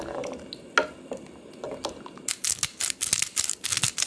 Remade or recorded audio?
recorded